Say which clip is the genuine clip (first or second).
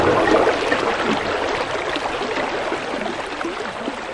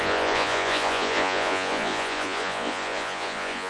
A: first